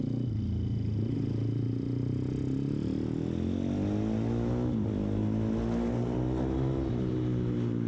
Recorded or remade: recorded